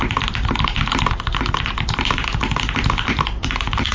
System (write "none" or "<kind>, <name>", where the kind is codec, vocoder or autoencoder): none